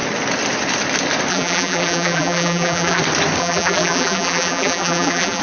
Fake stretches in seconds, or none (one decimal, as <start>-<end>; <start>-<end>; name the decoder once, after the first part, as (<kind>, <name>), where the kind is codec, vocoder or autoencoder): 1.3-3.0 (vocoder, BigVGAN v2); 3.4-5.4